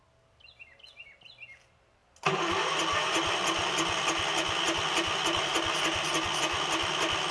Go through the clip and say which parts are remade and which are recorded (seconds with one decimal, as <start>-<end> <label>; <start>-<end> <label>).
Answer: 0.0-7.3 recorded